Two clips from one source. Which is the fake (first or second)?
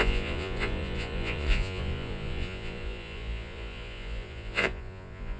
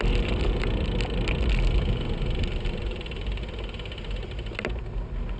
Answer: first